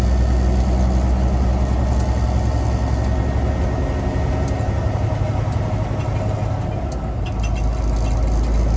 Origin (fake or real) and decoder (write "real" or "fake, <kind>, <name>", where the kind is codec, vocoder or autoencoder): real